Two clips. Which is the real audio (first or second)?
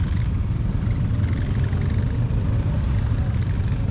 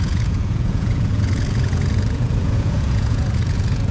first